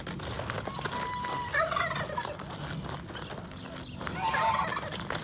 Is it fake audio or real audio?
real